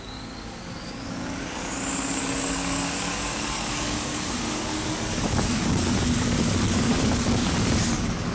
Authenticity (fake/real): fake